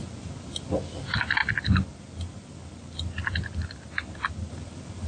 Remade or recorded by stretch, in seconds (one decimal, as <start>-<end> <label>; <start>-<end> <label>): 0.0-5.1 recorded